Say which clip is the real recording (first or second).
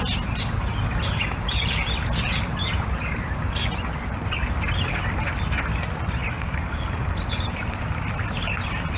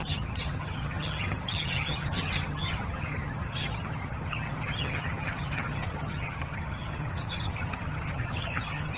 first